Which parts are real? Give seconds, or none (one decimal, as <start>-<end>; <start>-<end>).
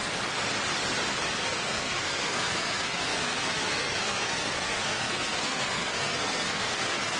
0.0-1.1